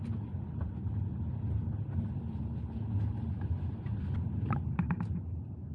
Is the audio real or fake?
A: real